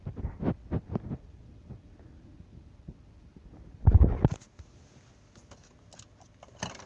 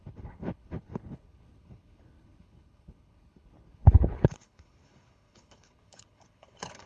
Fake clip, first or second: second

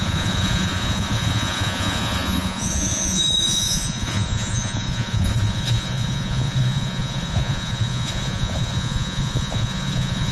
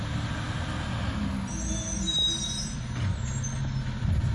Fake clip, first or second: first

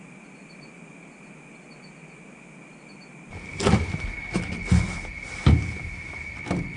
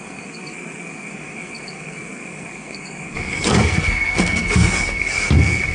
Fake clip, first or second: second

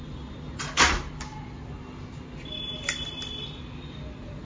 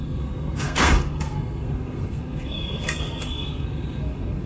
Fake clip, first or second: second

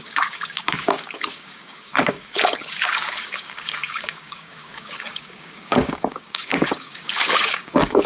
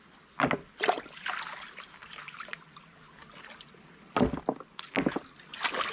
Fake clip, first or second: first